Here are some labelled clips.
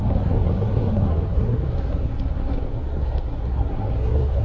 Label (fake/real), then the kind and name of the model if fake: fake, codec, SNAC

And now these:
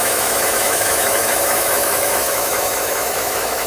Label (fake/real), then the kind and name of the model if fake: fake, autoencoder, DAC-VAE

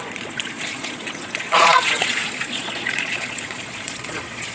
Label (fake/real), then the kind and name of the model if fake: fake, vocoder, Vocos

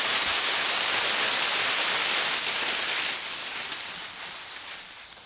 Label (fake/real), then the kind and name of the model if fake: real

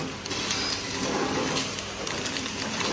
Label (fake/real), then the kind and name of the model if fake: real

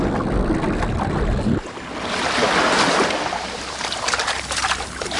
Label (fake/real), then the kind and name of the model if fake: real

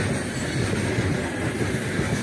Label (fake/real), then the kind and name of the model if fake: real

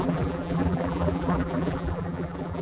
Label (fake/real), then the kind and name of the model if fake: fake, vocoder, BigVGAN v2